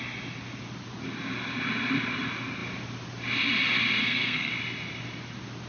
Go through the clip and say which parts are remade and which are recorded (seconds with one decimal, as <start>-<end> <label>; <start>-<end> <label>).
0.0-4.0 recorded; 4.0-4.5 remade; 4.5-5.7 recorded